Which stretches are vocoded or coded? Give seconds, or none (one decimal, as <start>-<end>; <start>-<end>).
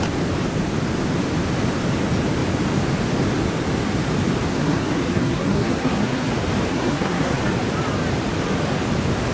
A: 4.5-6.3; 6.7-7.4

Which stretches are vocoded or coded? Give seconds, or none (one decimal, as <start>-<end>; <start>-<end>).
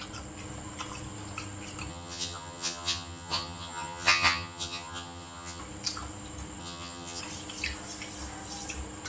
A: 1.9-5.6; 6.6-7.2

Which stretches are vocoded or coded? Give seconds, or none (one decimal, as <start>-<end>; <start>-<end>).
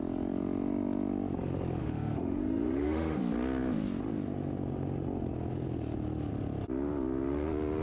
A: 1.8-3.2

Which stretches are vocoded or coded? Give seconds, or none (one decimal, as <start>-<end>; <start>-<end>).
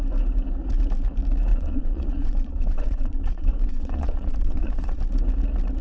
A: 1.5-5.0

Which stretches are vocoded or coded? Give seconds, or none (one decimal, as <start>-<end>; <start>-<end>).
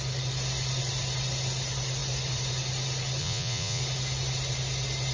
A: 3.2-3.8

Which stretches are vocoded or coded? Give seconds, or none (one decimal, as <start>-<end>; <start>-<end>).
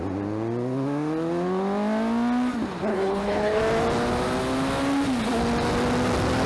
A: 2.9-3.6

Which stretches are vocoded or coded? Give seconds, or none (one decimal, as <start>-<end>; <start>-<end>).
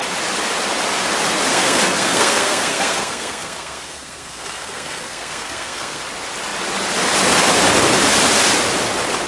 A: 1.5-6.0